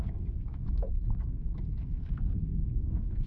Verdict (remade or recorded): remade